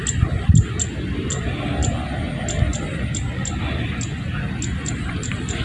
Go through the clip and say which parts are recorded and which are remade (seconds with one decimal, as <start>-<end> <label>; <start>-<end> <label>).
0.0-1.2 recorded; 1.2-1.8 remade; 1.8-5.1 recorded; 5.1-5.6 remade